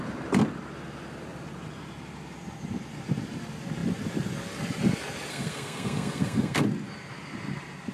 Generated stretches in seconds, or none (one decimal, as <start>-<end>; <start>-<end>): 5.3-6.6